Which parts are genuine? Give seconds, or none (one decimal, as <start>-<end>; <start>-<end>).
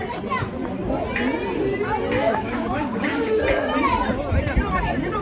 0.0-2.2; 3.4-5.2